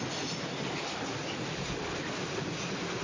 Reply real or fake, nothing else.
real